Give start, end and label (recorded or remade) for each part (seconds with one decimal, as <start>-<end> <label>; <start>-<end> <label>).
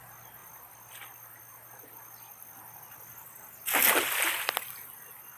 0.0-5.4 recorded